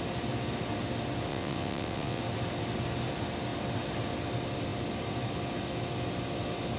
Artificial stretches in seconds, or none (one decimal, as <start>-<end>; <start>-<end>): 1.3-2.2